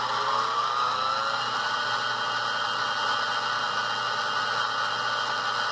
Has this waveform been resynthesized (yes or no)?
no